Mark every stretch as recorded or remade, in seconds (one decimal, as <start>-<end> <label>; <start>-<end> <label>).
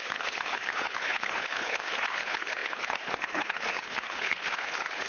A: 0.0-5.1 remade